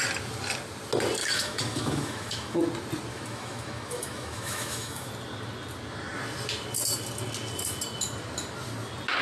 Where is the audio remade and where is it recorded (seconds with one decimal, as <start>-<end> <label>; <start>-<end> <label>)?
0.0-1.2 recorded; 1.2-2.6 remade; 2.6-3.1 recorded; 3.1-5.1 remade; 5.1-9.2 recorded